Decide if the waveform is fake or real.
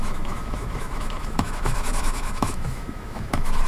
fake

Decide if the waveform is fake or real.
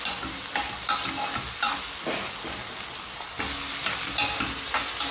real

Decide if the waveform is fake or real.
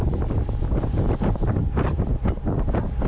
fake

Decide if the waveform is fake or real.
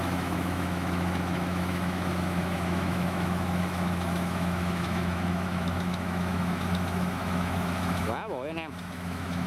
fake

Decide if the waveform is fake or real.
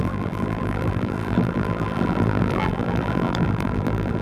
fake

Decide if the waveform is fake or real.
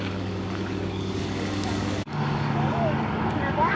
fake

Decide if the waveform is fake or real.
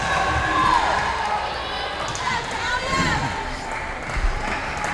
real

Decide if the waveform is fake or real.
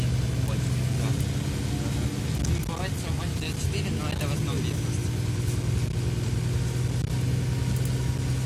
real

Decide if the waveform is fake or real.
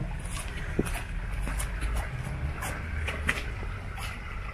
real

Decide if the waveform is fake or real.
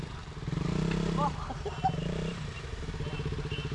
fake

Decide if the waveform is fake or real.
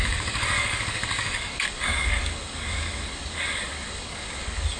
fake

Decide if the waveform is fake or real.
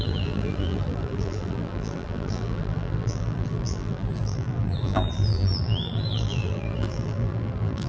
fake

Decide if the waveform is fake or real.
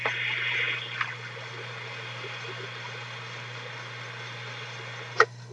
real